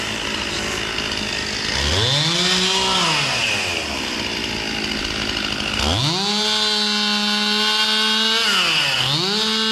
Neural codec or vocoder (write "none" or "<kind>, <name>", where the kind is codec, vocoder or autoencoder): none